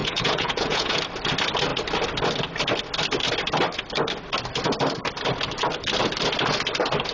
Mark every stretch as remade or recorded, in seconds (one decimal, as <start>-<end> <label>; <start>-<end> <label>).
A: 0.0-1.0 remade; 1.0-7.1 recorded

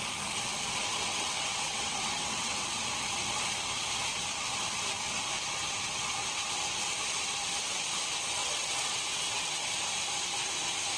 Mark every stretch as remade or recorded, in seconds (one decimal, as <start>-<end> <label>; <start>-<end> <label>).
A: 0.0-1.1 recorded; 1.1-2.8 remade; 2.8-8.4 recorded; 8.4-9.7 remade; 9.7-11.0 recorded

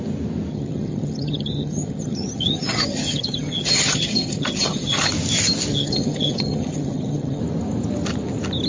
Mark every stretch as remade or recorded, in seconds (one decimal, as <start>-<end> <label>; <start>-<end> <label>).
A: 0.0-0.5 recorded; 0.5-5.1 remade; 5.1-5.7 recorded; 5.7-7.4 remade; 7.4-8.7 recorded